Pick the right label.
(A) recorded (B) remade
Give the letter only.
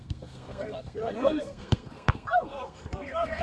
B